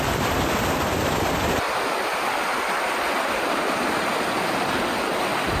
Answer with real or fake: real